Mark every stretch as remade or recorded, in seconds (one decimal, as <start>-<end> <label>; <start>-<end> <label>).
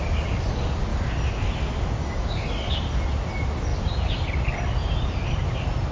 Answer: 0.0-5.9 recorded